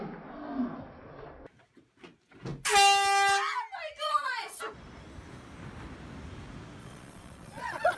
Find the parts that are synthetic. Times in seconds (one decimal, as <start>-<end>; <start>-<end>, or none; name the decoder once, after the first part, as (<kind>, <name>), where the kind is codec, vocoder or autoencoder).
4.0-4.6 (vocoder, Vocos); 6.8-8.0